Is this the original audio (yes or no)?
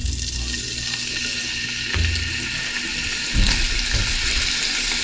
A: yes